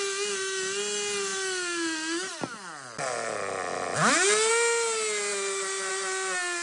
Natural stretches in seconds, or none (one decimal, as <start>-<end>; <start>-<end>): 0.0-6.6